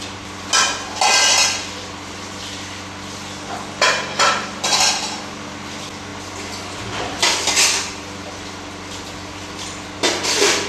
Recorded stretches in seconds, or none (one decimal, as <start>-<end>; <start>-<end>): 0.0-10.7

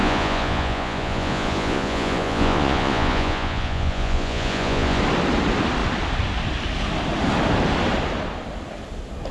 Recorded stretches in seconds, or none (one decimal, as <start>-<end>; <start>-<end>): 5.0-9.3

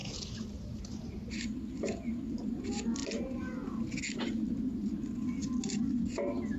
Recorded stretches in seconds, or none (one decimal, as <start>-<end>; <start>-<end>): 1.6-6.6

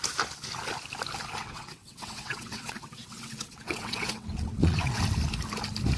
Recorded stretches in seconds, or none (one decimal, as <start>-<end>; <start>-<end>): 0.0-1.4; 5.0-6.0

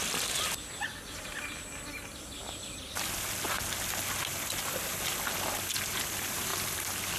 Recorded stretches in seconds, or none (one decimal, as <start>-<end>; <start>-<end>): 0.0-7.2